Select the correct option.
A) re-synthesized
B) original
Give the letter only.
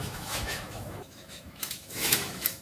A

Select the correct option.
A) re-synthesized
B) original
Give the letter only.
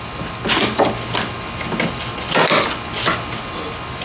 B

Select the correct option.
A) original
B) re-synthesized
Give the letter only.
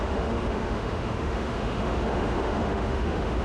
B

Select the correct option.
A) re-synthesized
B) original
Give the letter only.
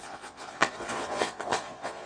A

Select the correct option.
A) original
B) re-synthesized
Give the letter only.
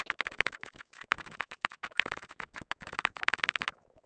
B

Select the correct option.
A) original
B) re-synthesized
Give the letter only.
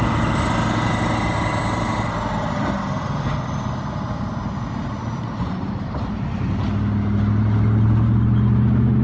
A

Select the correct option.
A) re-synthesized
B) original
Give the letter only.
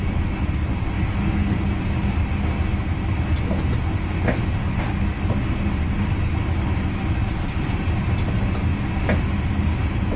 B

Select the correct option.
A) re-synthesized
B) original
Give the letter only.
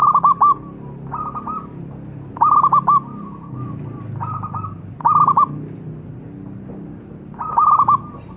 B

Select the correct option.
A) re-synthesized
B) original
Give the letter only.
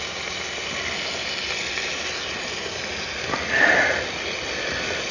B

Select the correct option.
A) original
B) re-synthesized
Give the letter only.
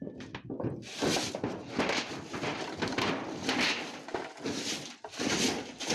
A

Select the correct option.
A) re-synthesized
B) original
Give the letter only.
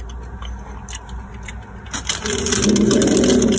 B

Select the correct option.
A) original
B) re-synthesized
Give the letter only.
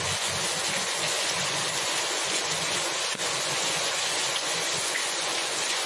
B